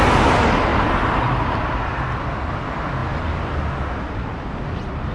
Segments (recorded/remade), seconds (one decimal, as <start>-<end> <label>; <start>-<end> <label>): 0.0-0.7 recorded; 0.7-1.4 remade; 1.4-5.1 recorded